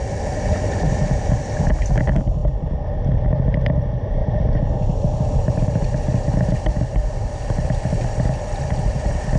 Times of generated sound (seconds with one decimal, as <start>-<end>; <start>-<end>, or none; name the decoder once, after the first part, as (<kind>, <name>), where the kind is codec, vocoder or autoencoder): none